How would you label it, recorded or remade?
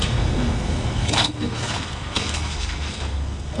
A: remade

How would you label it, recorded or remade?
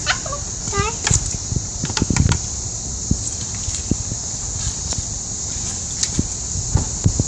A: recorded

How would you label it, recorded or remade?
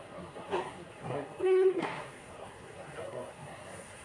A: remade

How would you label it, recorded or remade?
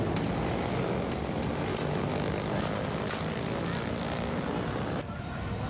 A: recorded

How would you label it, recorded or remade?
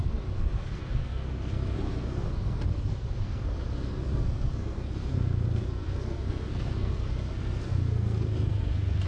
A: remade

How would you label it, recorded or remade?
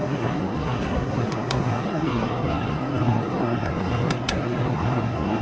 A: remade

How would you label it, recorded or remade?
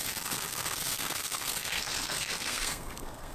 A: remade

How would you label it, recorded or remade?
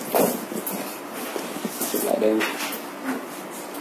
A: recorded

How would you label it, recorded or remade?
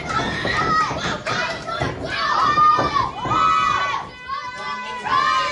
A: recorded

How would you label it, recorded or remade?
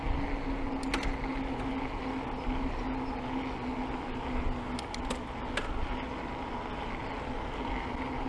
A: recorded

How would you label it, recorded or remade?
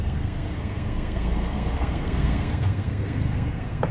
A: remade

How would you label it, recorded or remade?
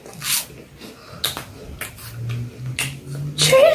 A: recorded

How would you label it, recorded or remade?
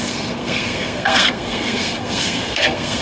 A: remade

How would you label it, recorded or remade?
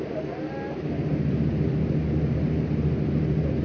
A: recorded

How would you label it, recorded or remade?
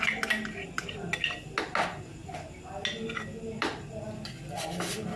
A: recorded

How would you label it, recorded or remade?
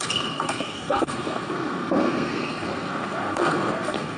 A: remade